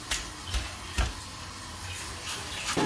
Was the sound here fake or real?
real